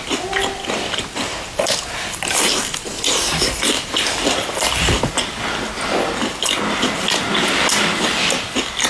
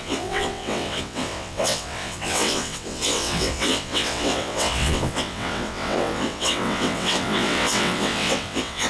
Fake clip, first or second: second